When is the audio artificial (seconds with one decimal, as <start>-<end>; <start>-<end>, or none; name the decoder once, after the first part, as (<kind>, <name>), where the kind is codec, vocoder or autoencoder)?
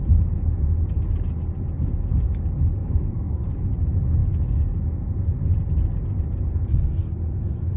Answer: 2.8-3.5 (codec, SNAC)